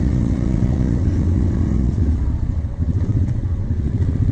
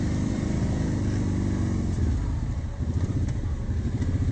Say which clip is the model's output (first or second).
first